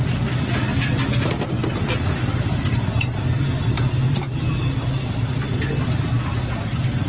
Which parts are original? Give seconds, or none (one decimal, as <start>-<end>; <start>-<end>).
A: 0.0-7.1